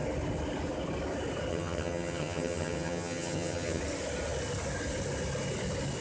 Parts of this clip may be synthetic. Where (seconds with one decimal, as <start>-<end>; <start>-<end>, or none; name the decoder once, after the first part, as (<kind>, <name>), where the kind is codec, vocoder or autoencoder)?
1.5-3.8 (vocoder, HiFi-GAN)